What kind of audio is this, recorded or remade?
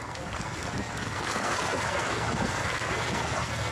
remade